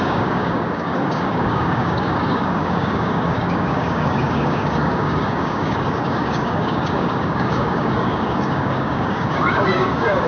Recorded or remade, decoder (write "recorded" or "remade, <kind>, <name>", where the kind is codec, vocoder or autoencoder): remade, codec, DAC